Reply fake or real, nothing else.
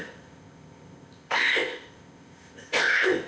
fake